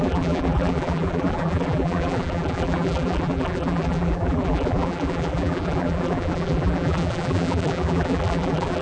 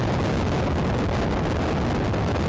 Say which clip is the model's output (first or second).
first